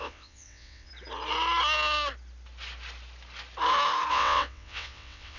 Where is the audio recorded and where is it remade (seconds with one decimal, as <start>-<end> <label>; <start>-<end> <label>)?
0.0-0.9 remade; 0.9-4.1 recorded; 4.1-5.4 remade